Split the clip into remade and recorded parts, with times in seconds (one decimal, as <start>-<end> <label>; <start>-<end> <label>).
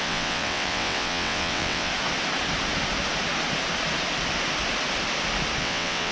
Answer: 0.0-1.9 remade; 1.9-5.6 recorded; 5.6-6.1 remade